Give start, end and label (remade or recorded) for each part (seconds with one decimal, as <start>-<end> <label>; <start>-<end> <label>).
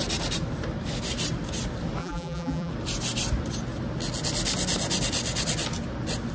0.0-2.0 recorded; 2.0-2.7 remade; 2.7-6.3 recorded